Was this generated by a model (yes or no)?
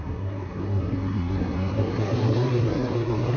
yes